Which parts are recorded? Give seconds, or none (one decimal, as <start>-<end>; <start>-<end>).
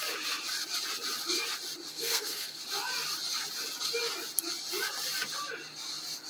0.0-1.9; 2.6-6.3